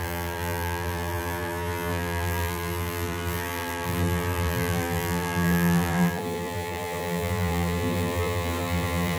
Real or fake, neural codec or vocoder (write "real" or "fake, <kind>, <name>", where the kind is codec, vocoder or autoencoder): fake, vocoder, BigVGAN v2